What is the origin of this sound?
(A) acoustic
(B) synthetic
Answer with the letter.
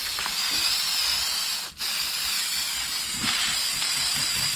A